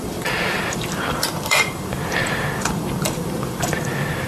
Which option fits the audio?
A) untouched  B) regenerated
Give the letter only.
B